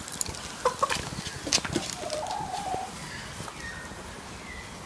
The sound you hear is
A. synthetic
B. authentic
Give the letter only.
B